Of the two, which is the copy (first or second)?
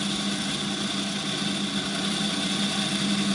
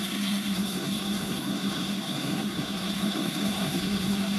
second